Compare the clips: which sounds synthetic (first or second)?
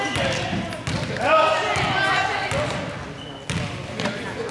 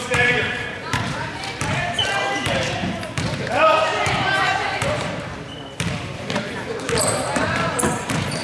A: second